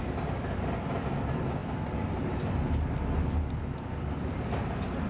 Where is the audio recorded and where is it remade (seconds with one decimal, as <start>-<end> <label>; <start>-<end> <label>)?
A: 0.0-5.1 recorded